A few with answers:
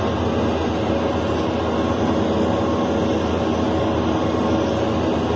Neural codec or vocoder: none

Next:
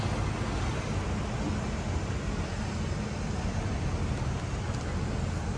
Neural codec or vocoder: none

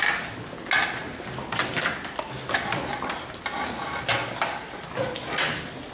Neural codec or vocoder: none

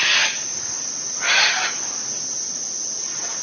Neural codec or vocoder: none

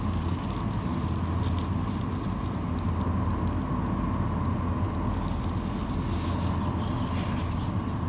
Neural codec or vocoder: none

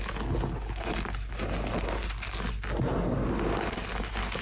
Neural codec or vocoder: none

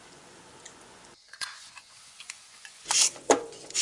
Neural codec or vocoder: vocoder, Vocos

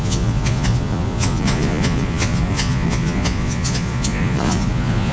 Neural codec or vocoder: vocoder, Vocos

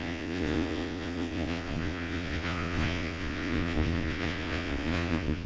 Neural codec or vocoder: vocoder, Vocos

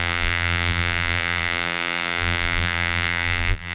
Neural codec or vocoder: vocoder, BigVGAN v2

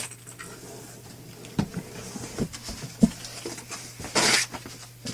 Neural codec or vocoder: none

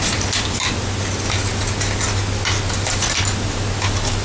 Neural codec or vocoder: none